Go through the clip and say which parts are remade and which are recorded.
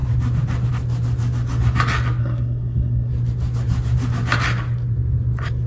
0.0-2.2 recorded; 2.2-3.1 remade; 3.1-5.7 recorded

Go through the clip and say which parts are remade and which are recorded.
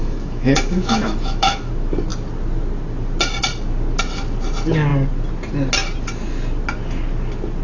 0.0-1.7 remade; 1.7-7.6 recorded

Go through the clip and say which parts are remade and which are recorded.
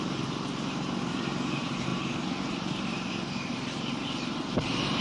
0.0-5.0 remade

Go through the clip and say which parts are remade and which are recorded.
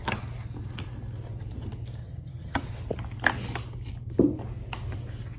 0.0-2.0 recorded; 2.0-2.6 remade; 2.6-5.4 recorded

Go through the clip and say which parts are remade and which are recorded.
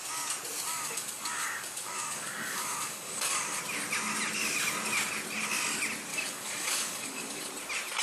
0.0-0.7 recorded; 0.7-3.6 remade; 3.6-6.1 recorded; 6.1-7.5 remade; 7.5-8.0 recorded